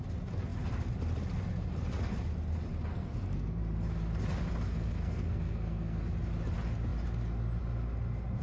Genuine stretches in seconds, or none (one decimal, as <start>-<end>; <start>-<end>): 0.0-2.9; 3.6-4.7; 6.0-8.4